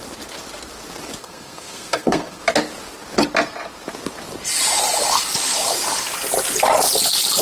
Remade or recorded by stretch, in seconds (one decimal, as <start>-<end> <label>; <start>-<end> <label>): 0.0-1.2 recorded; 1.2-2.4 remade; 2.4-7.4 recorded